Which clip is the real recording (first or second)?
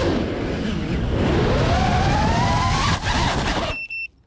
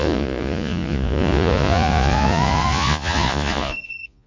first